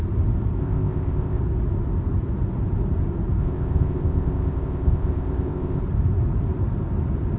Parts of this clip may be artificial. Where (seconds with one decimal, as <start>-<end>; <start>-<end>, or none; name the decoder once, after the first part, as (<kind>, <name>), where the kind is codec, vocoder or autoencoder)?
0.6-1.4 (codec, ZipCodec); 3.4-5.8